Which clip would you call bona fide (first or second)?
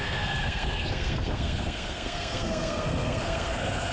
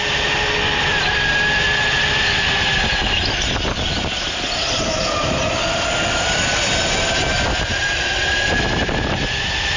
second